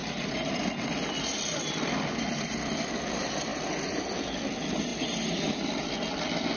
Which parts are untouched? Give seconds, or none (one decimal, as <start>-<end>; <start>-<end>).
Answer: 1.6-3.5; 4.0-4.9; 5.9-6.6